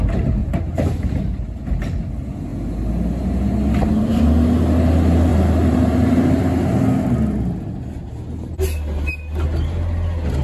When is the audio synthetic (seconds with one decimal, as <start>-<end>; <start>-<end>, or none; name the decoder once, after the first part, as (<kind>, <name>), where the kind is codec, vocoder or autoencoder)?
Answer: 0.4-1.6 (vocoder, BigVGAN v2); 5.3-6.4